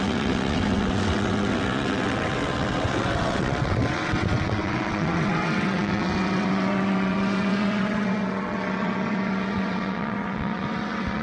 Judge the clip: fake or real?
fake